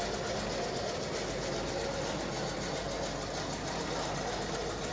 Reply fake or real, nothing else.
real